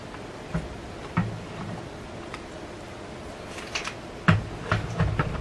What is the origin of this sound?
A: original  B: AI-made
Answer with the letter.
A